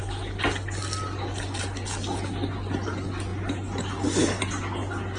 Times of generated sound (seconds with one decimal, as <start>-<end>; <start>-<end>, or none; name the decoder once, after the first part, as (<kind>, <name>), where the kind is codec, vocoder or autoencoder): none